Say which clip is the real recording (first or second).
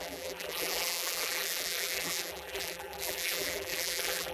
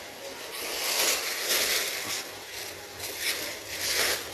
second